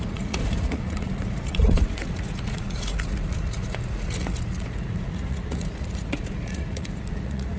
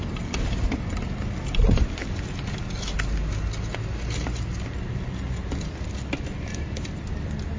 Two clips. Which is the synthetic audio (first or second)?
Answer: first